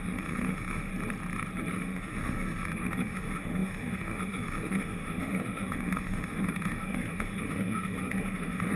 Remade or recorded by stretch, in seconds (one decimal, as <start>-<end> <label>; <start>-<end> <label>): 0.0-0.9 remade; 0.9-1.7 recorded; 1.7-8.8 remade